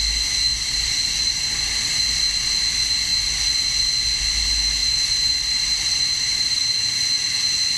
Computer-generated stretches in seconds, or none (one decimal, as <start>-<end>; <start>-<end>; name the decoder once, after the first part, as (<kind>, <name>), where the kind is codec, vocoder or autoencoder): 0.5-1.6 (vocoder, BigVGAN v2); 4.8-6.7